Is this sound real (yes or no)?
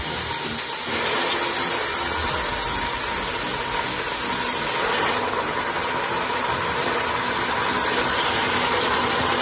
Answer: yes